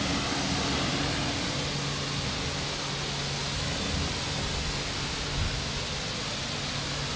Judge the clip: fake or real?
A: real